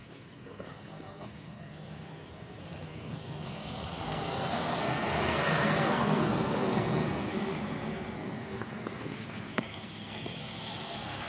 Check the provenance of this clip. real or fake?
fake